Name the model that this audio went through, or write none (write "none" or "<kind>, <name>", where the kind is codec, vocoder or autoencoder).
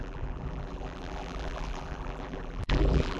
vocoder, BigVGAN v2